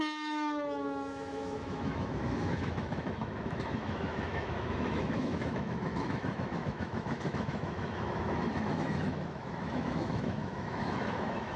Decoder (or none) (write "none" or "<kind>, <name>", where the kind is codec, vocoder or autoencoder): autoencoder, DAC-VAE